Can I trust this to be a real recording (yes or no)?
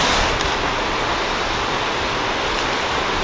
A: yes